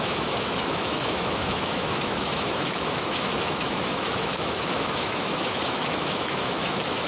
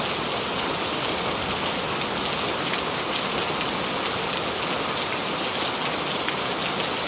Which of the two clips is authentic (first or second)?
second